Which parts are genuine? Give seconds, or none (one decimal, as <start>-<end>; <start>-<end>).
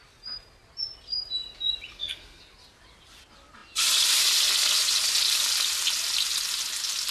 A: 0.0-1.9; 2.4-7.1